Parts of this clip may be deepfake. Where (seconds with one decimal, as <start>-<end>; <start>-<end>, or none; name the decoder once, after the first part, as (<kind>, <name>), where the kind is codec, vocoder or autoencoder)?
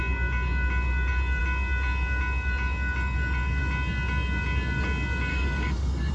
5.3-6.1 (codec, DAC)